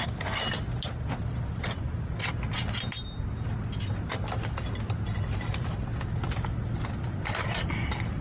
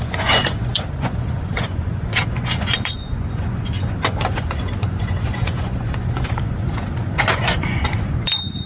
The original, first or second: first